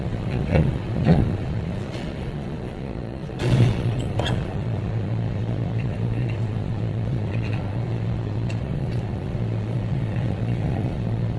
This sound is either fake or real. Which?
fake